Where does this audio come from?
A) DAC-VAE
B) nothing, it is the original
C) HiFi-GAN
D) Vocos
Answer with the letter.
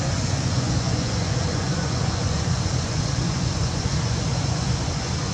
D